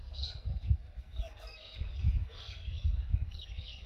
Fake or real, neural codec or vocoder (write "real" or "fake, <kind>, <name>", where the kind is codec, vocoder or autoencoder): fake, codec, SNAC